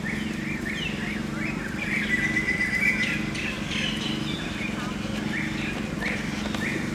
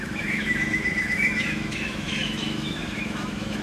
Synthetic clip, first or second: second